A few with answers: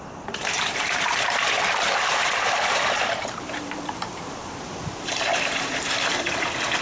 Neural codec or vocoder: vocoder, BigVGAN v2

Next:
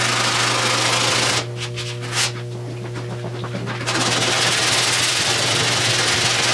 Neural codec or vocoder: none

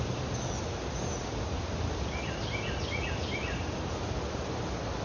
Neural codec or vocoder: none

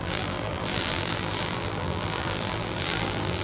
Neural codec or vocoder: vocoder, BigVGAN v2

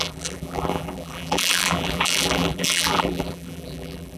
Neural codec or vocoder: vocoder, BigVGAN v2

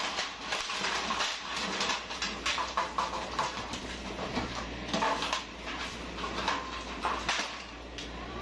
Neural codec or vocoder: vocoder, BigVGAN v2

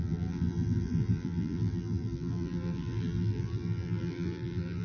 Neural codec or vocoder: vocoder, BigVGAN v2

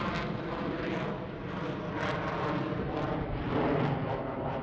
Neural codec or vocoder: none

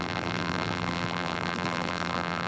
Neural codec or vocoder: vocoder, BigVGAN v2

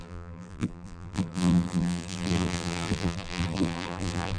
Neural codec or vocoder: vocoder, BigVGAN v2